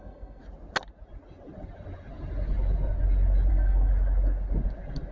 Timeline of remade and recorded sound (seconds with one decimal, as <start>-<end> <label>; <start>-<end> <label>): 0.0-0.4 remade; 0.4-3.5 recorded; 3.5-3.9 remade; 3.9-5.1 recorded